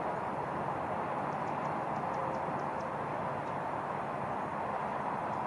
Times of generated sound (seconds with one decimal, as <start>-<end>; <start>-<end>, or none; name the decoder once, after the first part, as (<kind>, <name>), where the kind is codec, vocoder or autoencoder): none